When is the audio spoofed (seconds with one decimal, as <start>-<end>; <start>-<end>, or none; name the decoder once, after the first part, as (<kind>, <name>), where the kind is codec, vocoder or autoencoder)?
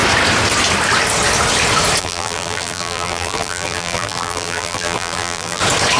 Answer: 2.0-5.6 (vocoder, BigVGAN v2)